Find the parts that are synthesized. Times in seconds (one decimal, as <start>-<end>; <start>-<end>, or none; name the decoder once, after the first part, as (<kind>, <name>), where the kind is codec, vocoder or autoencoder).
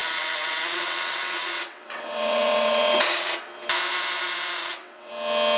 0.0-3.4 (vocoder, WaveNeXt); 4.6-5.1